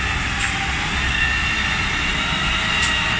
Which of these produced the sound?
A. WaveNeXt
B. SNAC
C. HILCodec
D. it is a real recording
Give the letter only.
D